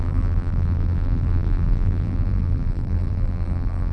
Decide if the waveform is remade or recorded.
remade